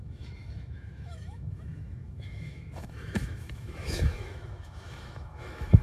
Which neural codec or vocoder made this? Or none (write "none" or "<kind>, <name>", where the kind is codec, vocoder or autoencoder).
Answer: autoencoder, DAC-VAE